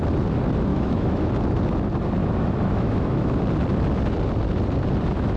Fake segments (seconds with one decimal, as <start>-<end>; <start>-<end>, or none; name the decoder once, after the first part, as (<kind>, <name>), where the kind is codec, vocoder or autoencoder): 0.7-1.3 (autoencoder, DAC-VAE); 2.2-3.4